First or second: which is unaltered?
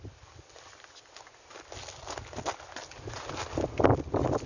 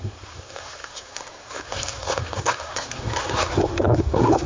first